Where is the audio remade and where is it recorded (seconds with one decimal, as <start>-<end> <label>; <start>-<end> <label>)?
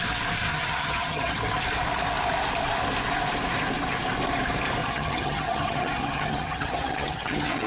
0.0-0.5 recorded; 0.5-1.3 remade; 1.3-4.8 recorded; 4.8-7.7 remade